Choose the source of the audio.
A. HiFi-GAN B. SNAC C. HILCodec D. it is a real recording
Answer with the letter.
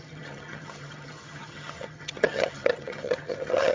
A